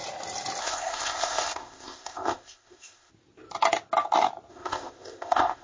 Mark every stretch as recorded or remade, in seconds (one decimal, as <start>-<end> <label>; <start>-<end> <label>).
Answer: 0.0-0.6 recorded; 0.6-3.1 remade; 3.1-4.5 recorded; 4.5-5.6 remade